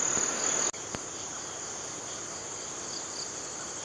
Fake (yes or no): no